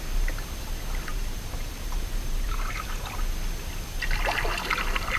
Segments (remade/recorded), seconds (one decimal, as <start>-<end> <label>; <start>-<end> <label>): 0.0-1.1 recorded; 1.1-2.8 remade; 2.8-5.2 recorded